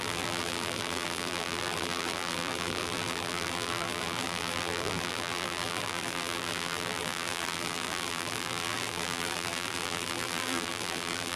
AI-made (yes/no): yes